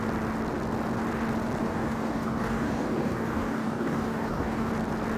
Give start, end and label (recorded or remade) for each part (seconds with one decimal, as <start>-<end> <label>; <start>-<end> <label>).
0.0-1.6 recorded; 1.6-4.7 remade; 4.7-5.2 recorded